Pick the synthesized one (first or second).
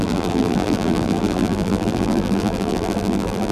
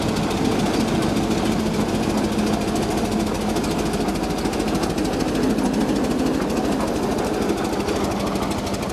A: first